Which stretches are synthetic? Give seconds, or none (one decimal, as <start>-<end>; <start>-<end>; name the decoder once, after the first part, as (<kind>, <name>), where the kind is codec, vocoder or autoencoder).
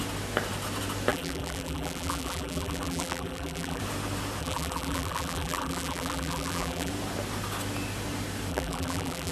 1.1-3.8 (vocoder, BigVGAN v2); 4.4-6.9; 8.5-9.3